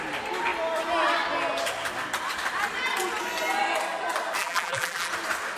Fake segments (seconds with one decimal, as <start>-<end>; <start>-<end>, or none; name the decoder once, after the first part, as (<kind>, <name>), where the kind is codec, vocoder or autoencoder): 4.4-5.1 (vocoder, BigVGAN v2)